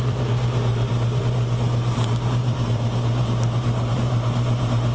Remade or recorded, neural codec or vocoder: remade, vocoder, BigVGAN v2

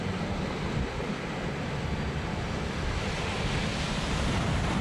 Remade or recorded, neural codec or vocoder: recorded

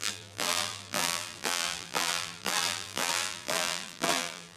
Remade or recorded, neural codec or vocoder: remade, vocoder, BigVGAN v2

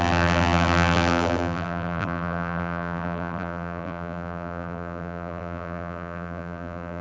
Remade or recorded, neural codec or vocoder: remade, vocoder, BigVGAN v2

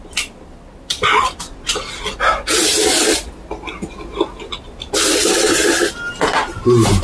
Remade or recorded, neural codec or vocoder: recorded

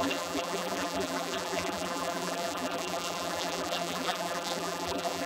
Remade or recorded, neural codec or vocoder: remade, vocoder, BigVGAN v2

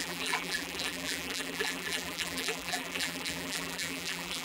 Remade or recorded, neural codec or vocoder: remade, vocoder, BigVGAN v2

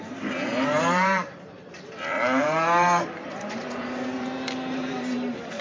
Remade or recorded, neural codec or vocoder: remade, vocoder, BigVGAN v2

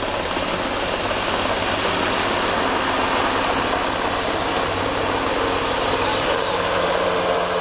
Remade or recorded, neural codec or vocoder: recorded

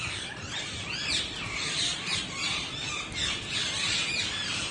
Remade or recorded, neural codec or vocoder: remade, vocoder, BigVGAN v2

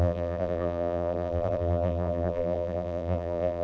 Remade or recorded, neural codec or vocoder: remade, vocoder, BigVGAN v2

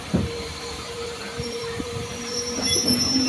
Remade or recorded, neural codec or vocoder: remade, vocoder, BigVGAN v2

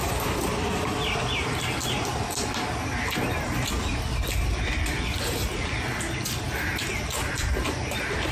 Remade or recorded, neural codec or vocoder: recorded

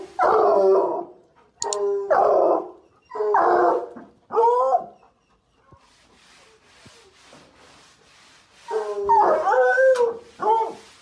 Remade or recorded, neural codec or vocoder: recorded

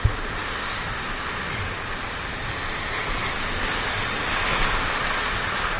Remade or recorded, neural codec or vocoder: recorded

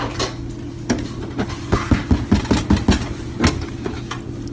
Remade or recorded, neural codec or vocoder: recorded